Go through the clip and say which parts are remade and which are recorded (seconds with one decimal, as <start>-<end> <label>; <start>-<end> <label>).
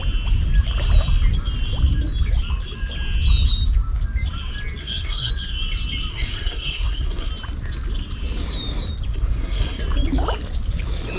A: 0.0-4.8 recorded; 4.8-5.3 remade; 5.3-6.1 recorded; 6.1-7.3 remade; 7.3-9.1 recorded; 9.1-9.8 remade; 9.8-11.2 recorded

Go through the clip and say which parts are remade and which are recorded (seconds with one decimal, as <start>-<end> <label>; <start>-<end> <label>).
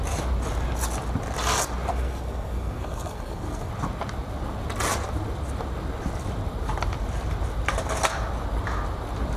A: 0.0-1.9 recorded; 1.9-3.7 remade; 3.7-9.4 recorded